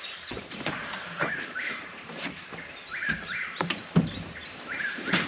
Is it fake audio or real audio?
fake